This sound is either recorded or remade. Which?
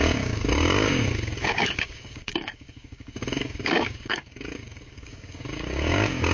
remade